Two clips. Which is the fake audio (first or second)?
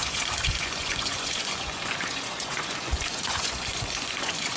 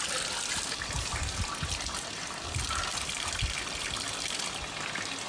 first